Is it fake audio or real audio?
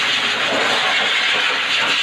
real